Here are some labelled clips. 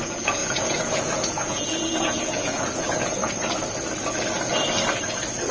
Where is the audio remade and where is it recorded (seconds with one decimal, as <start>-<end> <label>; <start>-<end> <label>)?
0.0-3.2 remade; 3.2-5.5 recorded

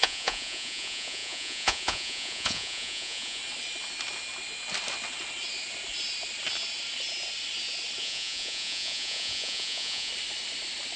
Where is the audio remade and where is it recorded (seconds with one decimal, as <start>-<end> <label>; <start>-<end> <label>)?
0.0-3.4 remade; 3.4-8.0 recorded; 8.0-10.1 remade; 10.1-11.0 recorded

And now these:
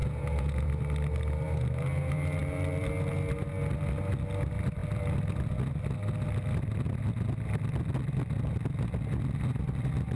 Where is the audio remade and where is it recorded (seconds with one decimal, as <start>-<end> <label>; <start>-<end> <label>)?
0.0-0.7 remade; 0.7-10.2 recorded

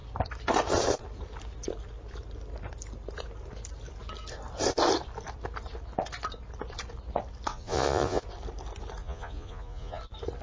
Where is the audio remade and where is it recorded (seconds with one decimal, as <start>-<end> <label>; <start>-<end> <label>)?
0.0-7.5 recorded; 7.5-8.2 remade; 8.2-9.0 recorded; 9.0-10.0 remade; 10.0-10.4 recorded

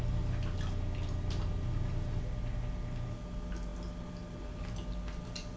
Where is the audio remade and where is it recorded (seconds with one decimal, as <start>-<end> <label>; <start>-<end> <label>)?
0.0-5.6 recorded

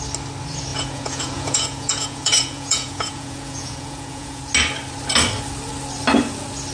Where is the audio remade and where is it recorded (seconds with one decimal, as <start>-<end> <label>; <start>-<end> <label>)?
0.0-0.7 recorded; 0.7-4.4 remade; 4.4-6.7 recorded

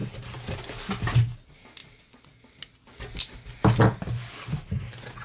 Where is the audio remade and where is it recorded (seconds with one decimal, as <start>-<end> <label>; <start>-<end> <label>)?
0.0-5.2 recorded